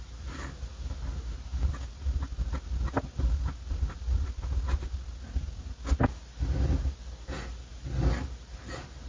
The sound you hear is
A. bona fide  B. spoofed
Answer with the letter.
A